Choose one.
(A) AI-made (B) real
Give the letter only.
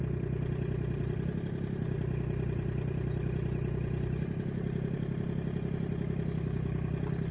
A